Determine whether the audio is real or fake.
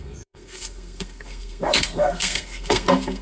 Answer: fake